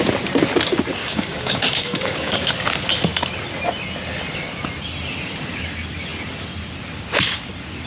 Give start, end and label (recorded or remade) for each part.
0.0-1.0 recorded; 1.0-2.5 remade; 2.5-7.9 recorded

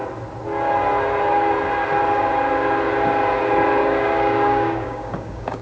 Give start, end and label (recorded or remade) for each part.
0.0-3.8 recorded; 3.8-5.6 remade

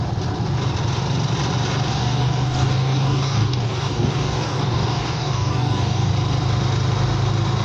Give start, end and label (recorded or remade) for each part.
0.0-1.9 recorded; 1.9-6.1 remade; 6.1-7.6 recorded